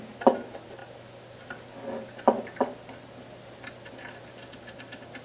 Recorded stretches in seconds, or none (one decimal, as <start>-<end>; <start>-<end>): 0.0-5.2